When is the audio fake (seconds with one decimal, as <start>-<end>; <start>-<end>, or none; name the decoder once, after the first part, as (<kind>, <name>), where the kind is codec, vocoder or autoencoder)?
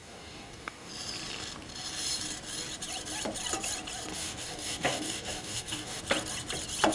0.0-0.9 (codec, DAC); 4.1-6.0